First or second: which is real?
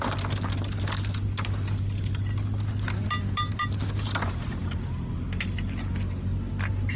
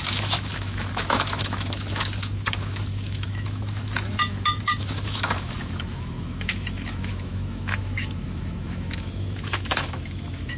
first